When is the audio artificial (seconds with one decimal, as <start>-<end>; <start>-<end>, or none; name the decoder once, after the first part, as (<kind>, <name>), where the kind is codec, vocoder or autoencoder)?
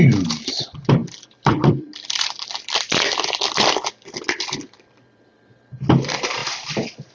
0.0-7.1 (vocoder, BigVGAN v2)